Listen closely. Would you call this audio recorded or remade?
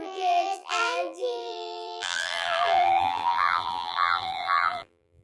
remade